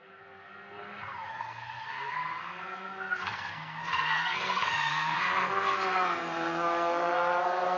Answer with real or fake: fake